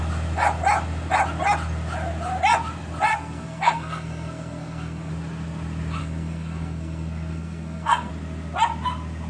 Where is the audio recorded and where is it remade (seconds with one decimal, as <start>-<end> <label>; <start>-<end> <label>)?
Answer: 0.0-3.1 recorded; 3.1-5.1 remade; 5.1-6.0 recorded; 6.0-8.1 remade; 8.1-9.3 recorded